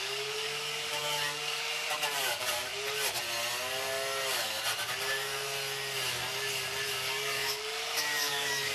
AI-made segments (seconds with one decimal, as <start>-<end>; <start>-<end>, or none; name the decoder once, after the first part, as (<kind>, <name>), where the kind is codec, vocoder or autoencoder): 0.0-2.7 (codec, DAC); 6.9-8.7